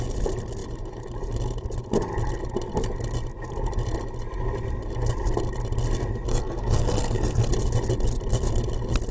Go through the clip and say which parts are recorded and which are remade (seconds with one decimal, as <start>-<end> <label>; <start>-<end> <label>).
0.0-6.3 recorded; 6.3-7.5 remade; 7.5-9.1 recorded